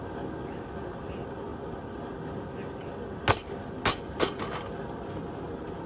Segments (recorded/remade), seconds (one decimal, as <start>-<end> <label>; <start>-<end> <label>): 0.0-5.9 recorded